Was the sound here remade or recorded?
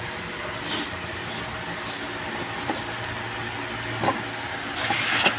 recorded